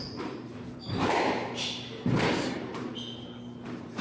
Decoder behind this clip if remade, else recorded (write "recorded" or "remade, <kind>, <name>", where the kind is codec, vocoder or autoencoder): remade, vocoder, BigVGAN v2